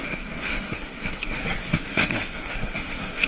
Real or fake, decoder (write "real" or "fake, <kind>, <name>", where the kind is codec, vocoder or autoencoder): fake, codec, SNAC